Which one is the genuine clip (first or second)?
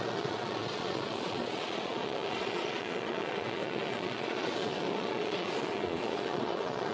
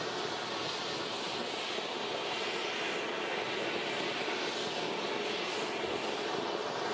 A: second